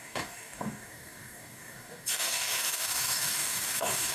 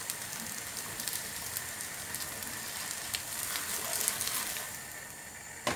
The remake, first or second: first